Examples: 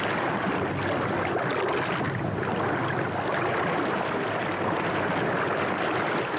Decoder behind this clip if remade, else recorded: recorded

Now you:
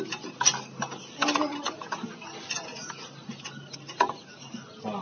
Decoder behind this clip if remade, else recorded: recorded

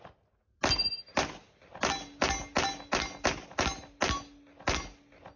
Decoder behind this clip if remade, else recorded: recorded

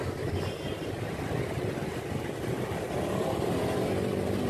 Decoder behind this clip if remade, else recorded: recorded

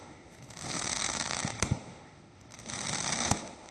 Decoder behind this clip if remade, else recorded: remade, autoencoder, DAC-VAE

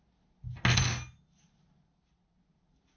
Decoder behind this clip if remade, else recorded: recorded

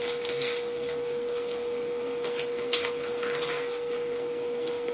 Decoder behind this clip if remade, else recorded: remade, codec, SNAC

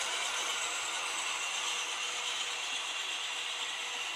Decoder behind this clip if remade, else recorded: recorded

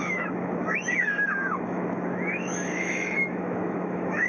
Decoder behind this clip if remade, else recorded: remade, autoencoder, DAC-VAE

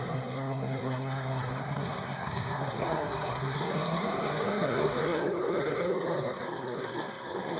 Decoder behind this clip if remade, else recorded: remade, codec, SNAC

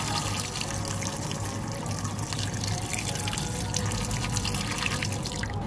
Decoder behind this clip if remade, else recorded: recorded